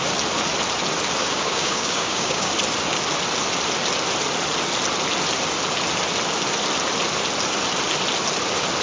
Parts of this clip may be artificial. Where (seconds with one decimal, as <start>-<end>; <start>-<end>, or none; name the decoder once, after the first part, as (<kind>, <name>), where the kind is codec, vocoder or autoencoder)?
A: 1.2-2.5 (codec, DAC)